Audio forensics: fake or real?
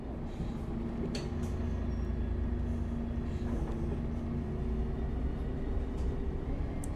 real